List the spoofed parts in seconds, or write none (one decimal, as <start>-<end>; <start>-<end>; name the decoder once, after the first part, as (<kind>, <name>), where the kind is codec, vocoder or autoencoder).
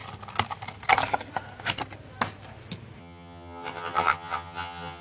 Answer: 3.0-5.0 (vocoder, HiFi-GAN)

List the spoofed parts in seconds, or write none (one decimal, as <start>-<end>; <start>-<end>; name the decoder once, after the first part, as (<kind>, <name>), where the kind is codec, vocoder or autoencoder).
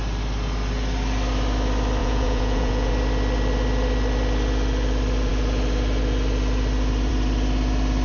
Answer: 2.0-2.9 (vocoder, Vocos)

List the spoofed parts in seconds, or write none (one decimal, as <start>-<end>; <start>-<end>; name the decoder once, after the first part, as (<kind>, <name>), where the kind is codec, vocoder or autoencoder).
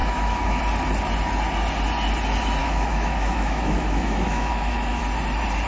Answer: 0.0-0.6 (autoencoder, DAC-VAE); 2.6-5.0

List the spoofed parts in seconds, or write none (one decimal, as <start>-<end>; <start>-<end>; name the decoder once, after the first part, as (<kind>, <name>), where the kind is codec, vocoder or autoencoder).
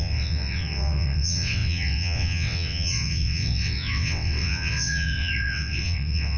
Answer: 0.0-6.4 (vocoder, WaveNeXt)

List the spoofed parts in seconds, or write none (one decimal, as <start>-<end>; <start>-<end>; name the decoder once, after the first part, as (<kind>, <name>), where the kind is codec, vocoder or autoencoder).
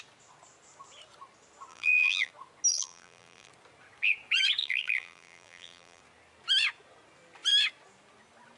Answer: 1.7-2.3 (vocoder, BigVGAN v2); 2.7-3.5; 4.6-6.0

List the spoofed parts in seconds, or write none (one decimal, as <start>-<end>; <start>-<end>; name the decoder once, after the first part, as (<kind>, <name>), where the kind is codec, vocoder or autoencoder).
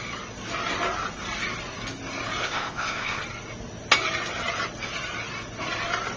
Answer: 2.4-3.2 (codec, ZipCodec)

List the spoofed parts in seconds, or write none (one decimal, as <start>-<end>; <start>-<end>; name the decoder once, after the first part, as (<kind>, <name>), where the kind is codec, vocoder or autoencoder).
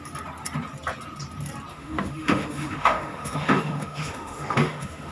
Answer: 1.7-5.1 (autoencoder, DAC-VAE)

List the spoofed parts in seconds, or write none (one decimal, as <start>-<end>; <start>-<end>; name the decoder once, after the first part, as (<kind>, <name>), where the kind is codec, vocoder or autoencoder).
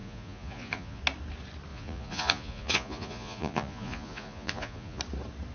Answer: 0.0-1.0 (vocoder, Vocos); 1.7-5.0